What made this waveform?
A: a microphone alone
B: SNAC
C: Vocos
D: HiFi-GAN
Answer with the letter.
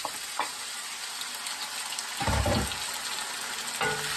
A